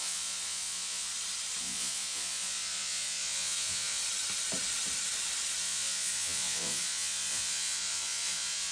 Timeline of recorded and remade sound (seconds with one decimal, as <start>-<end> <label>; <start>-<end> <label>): 0.0-1.1 remade; 1.1-1.6 recorded; 1.6-4.0 remade; 4.0-5.6 recorded; 5.6-8.7 remade